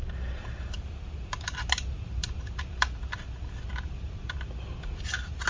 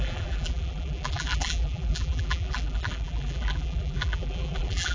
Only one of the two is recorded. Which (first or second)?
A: first